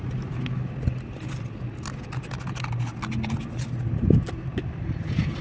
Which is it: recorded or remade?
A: recorded